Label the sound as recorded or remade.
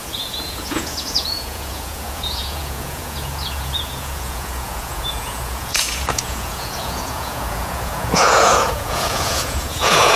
remade